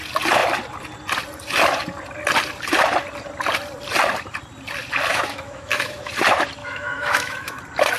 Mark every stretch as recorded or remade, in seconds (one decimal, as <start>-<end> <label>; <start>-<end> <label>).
0.0-5.1 recorded; 5.1-6.1 remade; 6.1-6.6 recorded; 6.6-7.6 remade; 7.6-8.0 recorded